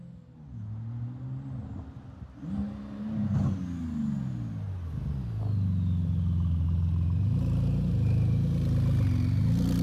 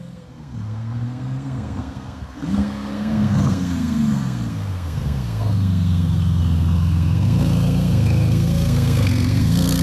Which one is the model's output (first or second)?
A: second